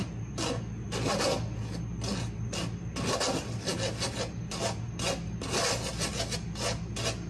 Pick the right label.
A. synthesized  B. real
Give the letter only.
B